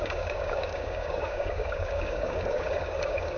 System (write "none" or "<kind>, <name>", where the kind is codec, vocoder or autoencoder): codec, DAC